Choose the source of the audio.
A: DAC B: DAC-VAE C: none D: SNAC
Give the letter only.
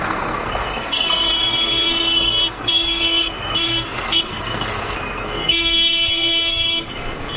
D